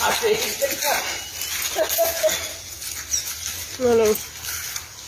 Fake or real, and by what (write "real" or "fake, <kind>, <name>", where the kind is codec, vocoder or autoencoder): real